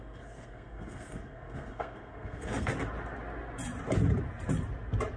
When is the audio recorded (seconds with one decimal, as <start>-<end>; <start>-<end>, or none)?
2.7-5.2